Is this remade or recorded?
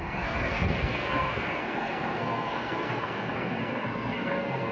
remade